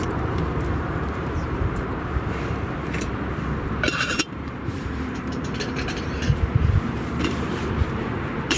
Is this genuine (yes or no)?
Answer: no